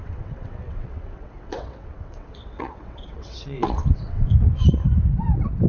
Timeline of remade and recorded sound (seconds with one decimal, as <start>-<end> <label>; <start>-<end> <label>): 0.0-4.3 remade; 4.3-5.7 recorded